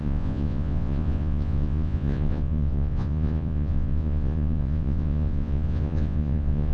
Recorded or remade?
remade